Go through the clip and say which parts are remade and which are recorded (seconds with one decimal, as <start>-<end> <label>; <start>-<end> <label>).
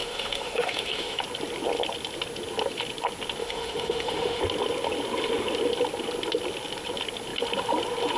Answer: 0.0-1.2 remade; 1.2-3.4 recorded; 3.4-4.4 remade; 4.4-8.2 recorded